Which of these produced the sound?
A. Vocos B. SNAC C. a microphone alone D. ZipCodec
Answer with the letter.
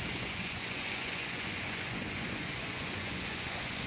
A